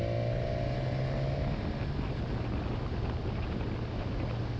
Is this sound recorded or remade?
recorded